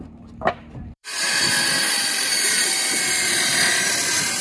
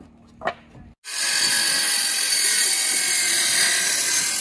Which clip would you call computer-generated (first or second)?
first